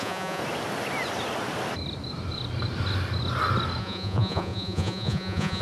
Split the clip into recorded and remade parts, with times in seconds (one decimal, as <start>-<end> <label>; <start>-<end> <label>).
0.0-0.4 remade; 0.4-3.8 recorded; 3.8-5.6 remade